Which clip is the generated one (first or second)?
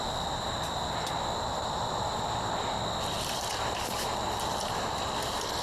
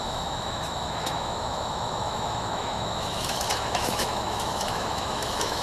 second